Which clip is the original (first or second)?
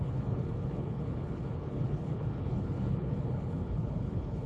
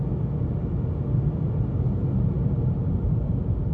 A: second